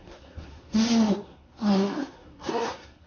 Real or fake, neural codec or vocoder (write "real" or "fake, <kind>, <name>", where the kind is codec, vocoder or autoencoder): fake, codec, SNAC